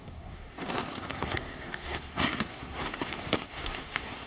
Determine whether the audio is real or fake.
fake